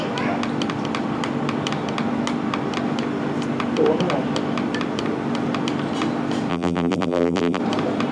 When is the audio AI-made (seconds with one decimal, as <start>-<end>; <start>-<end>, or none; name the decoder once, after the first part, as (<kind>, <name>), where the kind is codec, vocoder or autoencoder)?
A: 6.5-7.6 (vocoder, BigVGAN v2)